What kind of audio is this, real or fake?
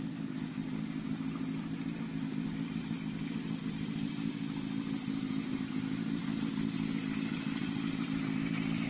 real